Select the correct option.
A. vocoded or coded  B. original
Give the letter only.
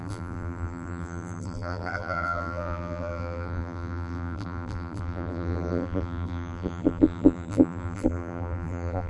A